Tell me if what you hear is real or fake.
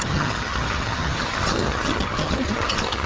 fake